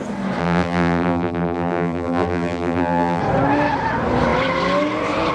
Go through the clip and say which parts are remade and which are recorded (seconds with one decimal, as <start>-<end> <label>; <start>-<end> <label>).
0.0-0.4 recorded; 0.4-3.2 remade; 3.2-5.3 recorded